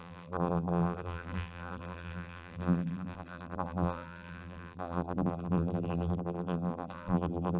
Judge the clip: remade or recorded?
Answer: remade